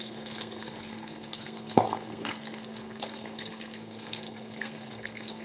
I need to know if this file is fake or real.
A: fake